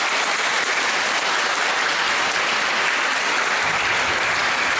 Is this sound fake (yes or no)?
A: no